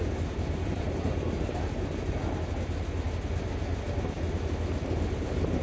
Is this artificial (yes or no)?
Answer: no